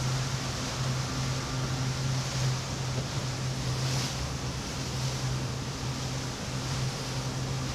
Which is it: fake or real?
real